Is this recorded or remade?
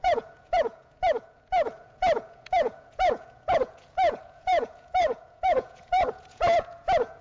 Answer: remade